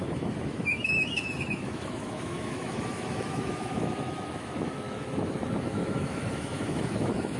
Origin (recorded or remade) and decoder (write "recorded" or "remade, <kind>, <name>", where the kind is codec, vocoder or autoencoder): remade, autoencoder, DAC-VAE